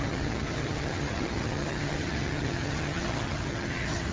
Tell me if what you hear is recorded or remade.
remade